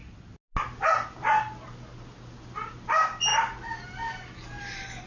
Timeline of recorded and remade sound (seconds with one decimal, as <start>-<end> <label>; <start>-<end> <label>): 0.0-5.1 recorded